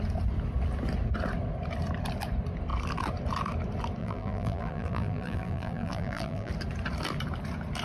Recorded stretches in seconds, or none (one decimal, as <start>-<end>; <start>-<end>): 0.0-4.0; 6.5-7.8